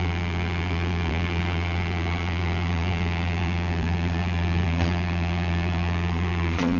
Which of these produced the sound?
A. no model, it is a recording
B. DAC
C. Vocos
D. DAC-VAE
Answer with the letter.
C